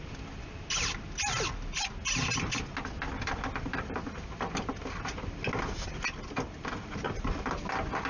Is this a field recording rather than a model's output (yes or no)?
yes